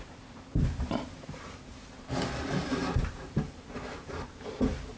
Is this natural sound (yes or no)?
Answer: no